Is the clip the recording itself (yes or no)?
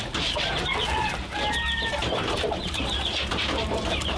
no